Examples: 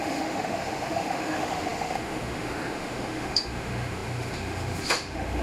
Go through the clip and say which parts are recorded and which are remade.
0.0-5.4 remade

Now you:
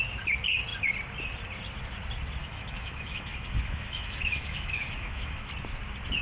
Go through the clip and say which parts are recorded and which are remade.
0.0-2.4 recorded; 2.4-5.5 remade; 5.5-6.2 recorded

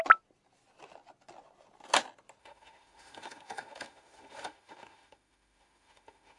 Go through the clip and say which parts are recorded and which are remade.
0.0-2.4 recorded; 2.4-6.4 remade

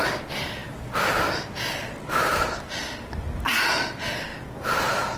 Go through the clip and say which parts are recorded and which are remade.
0.0-5.2 recorded

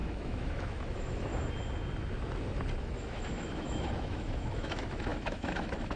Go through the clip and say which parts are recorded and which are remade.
0.0-1.3 remade; 1.3-2.8 recorded; 2.8-6.0 remade